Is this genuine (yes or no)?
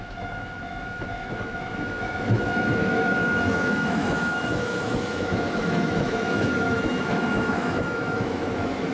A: no